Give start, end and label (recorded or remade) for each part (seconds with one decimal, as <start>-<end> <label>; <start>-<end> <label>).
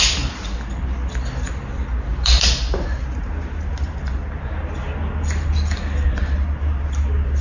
0.0-7.4 recorded